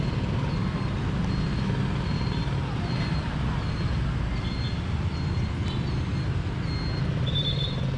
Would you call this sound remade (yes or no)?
no